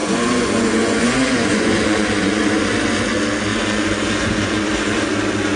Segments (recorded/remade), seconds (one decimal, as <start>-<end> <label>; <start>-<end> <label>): 0.0-2.4 remade; 2.4-3.5 recorded; 3.5-4.6 remade; 4.6-5.6 recorded